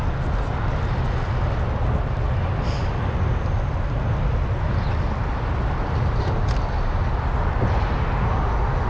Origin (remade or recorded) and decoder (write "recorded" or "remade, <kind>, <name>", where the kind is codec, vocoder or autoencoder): recorded